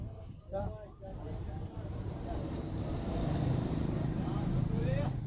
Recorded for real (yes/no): no